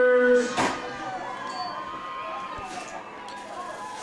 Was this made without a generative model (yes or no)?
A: yes